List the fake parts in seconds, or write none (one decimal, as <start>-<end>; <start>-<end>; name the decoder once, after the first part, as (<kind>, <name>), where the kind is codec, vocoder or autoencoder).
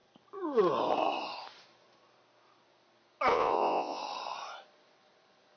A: 3.3-4.0 (vocoder, Vocos)